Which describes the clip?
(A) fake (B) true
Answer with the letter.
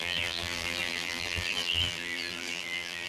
A